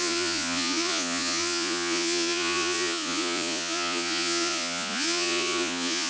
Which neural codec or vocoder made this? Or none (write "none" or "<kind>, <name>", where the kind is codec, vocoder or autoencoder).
vocoder, Vocos